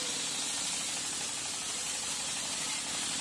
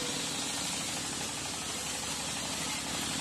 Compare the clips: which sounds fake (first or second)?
first